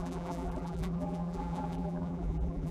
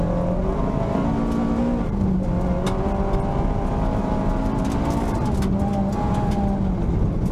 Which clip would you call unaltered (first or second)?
second